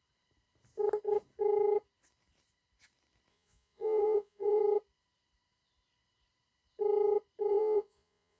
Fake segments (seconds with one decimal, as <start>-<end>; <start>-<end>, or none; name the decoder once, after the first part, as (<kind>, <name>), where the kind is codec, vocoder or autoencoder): 3.3-4.6 (vocoder, Vocos); 7.5-8.4